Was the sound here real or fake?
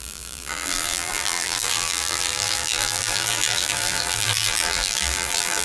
fake